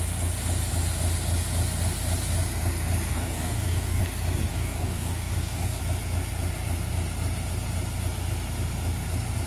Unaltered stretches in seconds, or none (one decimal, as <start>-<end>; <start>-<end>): 0.0-3.1; 4.0-4.5; 5.8-9.5